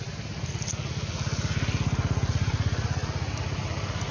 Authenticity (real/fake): real